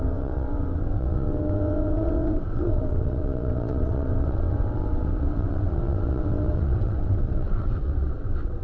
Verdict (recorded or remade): remade